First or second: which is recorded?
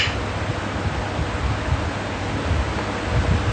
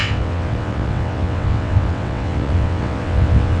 first